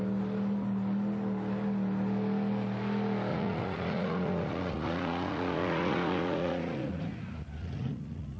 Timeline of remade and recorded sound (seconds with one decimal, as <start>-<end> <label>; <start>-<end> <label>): 0.0-3.3 recorded; 3.3-7.0 remade; 7.0-7.6 recorded; 7.6-8.4 remade